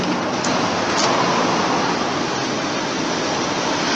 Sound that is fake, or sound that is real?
real